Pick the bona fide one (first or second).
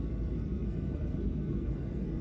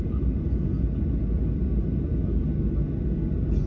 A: second